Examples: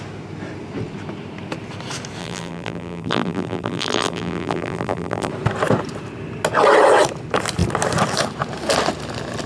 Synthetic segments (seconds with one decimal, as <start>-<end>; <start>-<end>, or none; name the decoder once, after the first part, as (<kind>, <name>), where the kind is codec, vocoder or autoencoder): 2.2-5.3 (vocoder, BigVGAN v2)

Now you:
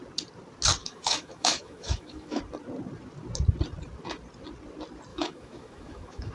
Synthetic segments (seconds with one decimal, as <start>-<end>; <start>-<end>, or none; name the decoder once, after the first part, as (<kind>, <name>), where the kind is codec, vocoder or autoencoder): 0.8-2.4 (autoencoder, DAC-VAE); 5.1-6.3

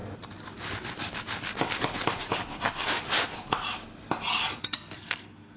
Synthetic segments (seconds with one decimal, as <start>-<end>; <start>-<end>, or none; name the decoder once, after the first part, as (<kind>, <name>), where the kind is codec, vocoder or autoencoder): 4.6-5.6 (codec, SNAC)